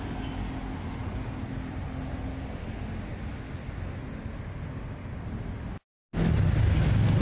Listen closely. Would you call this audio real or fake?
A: real